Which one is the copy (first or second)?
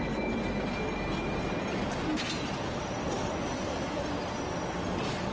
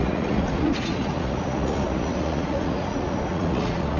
second